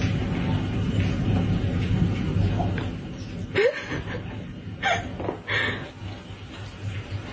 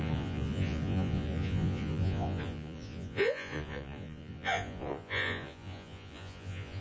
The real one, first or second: first